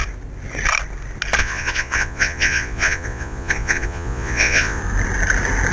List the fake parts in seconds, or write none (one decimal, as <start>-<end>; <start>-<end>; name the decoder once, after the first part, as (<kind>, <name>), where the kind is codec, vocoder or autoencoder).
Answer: 1.4-4.8 (vocoder, Vocos)